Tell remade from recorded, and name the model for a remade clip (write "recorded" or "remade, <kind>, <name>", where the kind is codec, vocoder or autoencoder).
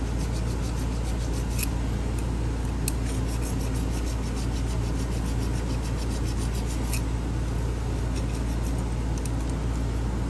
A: recorded